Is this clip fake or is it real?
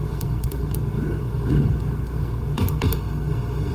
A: fake